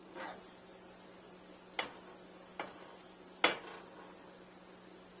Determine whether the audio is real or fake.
real